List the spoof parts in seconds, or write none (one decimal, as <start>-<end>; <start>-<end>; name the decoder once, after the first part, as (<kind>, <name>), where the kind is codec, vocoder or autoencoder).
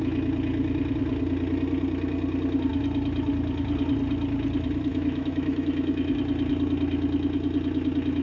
4.9-6.2 (autoencoder, DAC-VAE)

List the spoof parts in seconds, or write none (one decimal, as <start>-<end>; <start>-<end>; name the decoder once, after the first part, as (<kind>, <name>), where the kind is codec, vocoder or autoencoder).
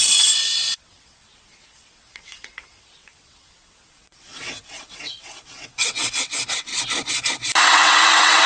0.0-6.7 (vocoder, WaveNeXt); 7.6-8.5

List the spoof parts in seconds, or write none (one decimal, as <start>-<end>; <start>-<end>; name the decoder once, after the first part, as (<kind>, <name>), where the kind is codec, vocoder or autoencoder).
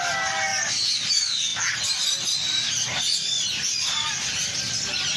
none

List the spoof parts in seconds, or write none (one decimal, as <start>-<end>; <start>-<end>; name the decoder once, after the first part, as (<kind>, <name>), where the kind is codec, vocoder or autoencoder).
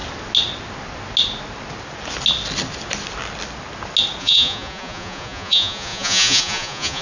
4.2-7.0 (vocoder, Vocos)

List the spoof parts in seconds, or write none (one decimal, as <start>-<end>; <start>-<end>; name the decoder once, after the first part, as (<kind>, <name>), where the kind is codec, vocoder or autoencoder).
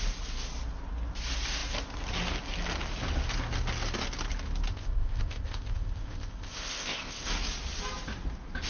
4.7-7.3 (codec, ZipCodec)